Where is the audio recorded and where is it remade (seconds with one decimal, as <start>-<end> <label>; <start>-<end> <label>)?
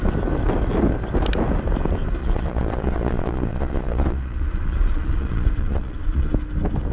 0.0-2.2 recorded; 2.2-6.3 remade; 6.3-6.9 recorded